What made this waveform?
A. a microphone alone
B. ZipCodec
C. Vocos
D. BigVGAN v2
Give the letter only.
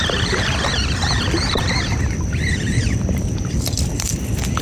D